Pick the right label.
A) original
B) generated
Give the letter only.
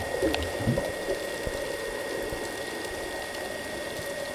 A